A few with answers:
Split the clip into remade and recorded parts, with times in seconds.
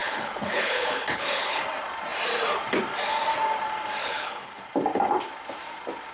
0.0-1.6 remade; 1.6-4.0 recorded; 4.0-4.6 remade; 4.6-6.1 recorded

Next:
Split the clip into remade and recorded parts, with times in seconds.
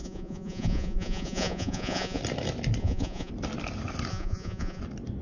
0.0-2.2 remade; 2.2-2.8 recorded; 2.8-3.3 remade; 3.3-4.1 recorded; 4.1-4.8 remade; 4.8-5.2 recorded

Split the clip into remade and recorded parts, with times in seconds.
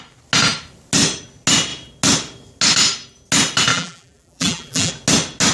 0.0-3.7 recorded; 3.7-4.9 remade; 4.9-5.5 recorded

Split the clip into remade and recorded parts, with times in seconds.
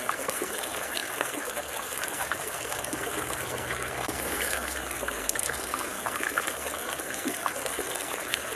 0.0-8.6 remade